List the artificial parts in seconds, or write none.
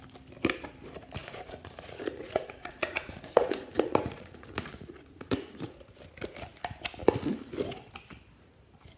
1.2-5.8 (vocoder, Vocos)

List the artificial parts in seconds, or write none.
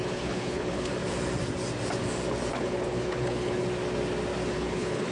0.0-0.9 (codec, HILCodec); 2.5-3.6; 4.5-5.1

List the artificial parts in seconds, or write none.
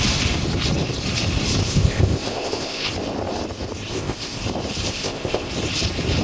1.6-2.9 (codec, ZipCodec); 3.9-4.4; 4.9-5.5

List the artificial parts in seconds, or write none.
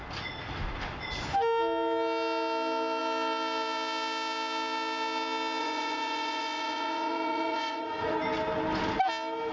5.6-8.2 (vocoder, Vocos)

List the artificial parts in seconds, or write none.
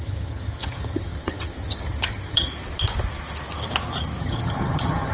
0.0-2.5 (vocoder, HiFi-GAN); 4.2-5.1